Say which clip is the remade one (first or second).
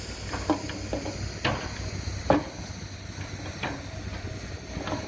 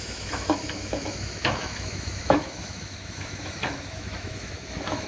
second